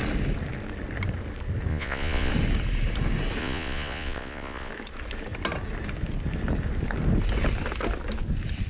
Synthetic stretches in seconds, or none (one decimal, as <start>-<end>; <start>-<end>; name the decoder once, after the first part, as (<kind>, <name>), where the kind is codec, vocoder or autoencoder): 1.7-2.3 (vocoder, Vocos); 3.4-4.7